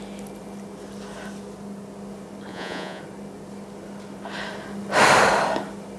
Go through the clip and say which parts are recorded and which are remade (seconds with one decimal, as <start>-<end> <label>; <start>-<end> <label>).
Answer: 0.0-2.5 recorded; 2.5-3.0 remade; 3.0-6.0 recorded